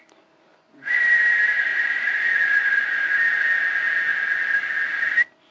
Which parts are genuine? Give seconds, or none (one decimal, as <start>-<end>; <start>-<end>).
0.0-0.5; 1.2-1.7; 3.2-5.5